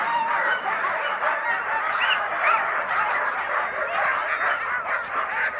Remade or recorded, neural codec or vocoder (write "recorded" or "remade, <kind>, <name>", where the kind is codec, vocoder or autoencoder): recorded